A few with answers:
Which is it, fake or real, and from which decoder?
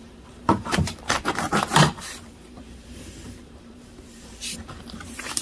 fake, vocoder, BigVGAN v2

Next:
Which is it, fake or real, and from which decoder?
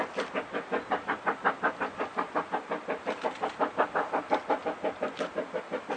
real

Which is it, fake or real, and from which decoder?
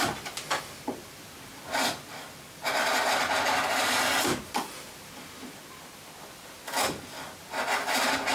real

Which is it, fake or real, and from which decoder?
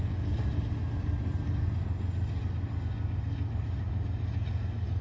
real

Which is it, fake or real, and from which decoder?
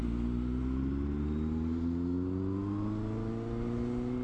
real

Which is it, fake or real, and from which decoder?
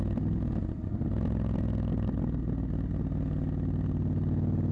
real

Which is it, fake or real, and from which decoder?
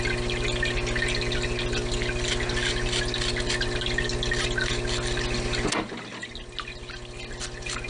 real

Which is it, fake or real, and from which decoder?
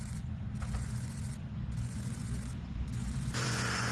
fake, vocoder, Vocos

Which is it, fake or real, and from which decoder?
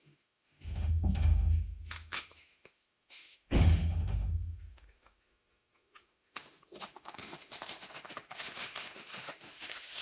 fake, autoencoder, DAC-VAE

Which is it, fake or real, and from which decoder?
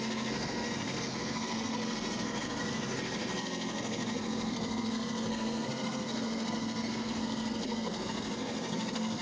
fake, codec, SNAC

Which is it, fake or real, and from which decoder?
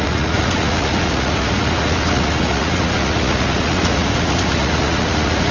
fake, vocoder, Vocos